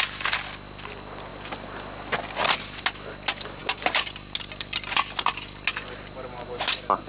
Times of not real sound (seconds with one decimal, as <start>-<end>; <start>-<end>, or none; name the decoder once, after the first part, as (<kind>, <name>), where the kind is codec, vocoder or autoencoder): none